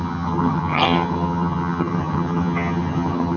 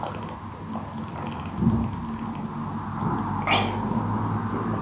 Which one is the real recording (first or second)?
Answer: second